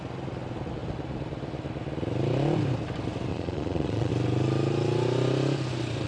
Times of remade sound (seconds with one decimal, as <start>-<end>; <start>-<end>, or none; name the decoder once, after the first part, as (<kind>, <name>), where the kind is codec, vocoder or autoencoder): 3.3-4.1 (vocoder, Vocos)